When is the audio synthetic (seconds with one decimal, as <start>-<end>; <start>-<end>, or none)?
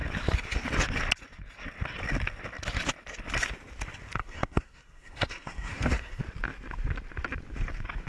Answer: 4.2-6.2